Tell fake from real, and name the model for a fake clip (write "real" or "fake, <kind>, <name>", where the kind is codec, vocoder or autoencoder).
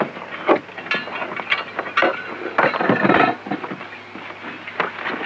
real